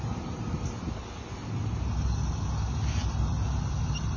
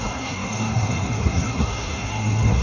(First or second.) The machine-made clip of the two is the second